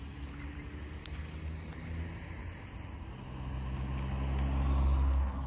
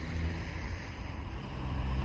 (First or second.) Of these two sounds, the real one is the first